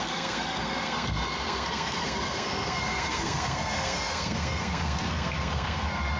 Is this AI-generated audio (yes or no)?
yes